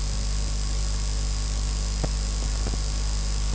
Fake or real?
real